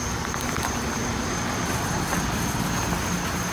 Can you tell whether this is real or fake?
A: real